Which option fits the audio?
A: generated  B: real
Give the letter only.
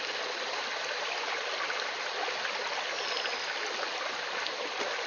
B